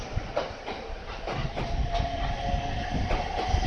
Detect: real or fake real